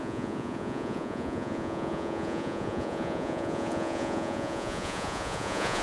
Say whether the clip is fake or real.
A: fake